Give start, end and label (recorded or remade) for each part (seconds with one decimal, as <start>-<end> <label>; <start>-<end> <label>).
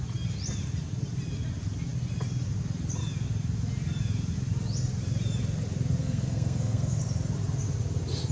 0.0-6.0 recorded; 6.0-7.0 remade; 7.0-8.3 recorded